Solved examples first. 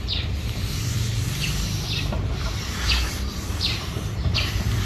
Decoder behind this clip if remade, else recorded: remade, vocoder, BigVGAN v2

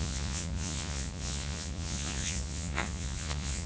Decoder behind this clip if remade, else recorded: remade, vocoder, Vocos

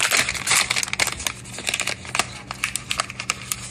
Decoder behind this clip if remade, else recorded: recorded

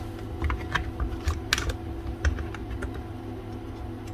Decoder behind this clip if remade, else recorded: recorded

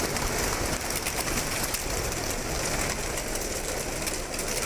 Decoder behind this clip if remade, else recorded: recorded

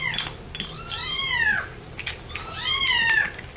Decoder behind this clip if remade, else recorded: recorded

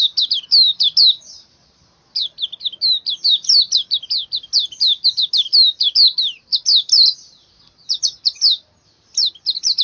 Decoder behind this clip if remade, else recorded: recorded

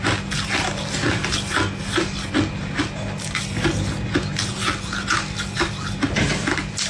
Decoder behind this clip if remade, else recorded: recorded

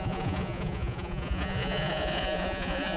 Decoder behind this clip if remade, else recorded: remade, vocoder, Vocos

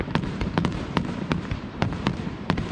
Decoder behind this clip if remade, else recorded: remade, vocoder, BigVGAN v2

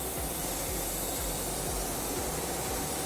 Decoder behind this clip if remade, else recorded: remade, vocoder, BigVGAN v2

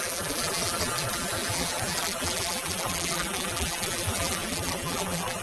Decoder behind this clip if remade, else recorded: remade, vocoder, BigVGAN v2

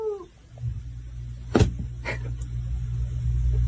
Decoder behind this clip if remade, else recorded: recorded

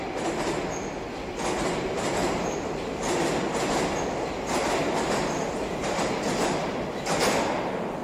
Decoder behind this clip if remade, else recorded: recorded